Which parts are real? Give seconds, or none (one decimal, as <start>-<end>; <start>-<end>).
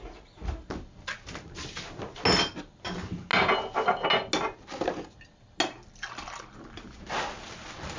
0.0-8.0